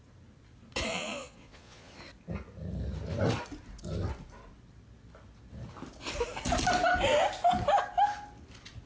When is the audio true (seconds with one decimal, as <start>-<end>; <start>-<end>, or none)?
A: 0.0-0.9; 1.9-8.9